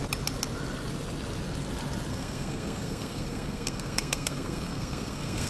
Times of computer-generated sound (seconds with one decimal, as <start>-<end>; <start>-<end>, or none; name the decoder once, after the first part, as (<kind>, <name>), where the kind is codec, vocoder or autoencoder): 2.1-5.5 (codec, SNAC)